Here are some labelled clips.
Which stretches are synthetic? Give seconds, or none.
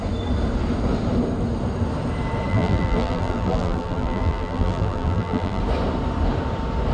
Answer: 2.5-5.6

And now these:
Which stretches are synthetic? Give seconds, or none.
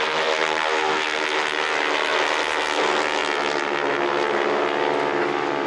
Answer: none